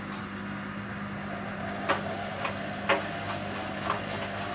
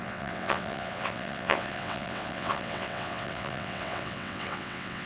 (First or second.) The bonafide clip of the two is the first